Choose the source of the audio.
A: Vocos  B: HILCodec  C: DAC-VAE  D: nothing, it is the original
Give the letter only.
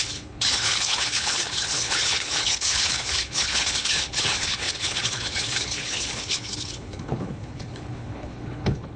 B